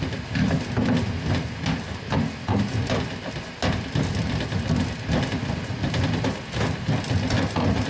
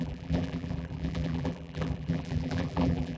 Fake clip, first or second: second